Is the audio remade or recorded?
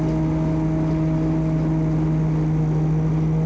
recorded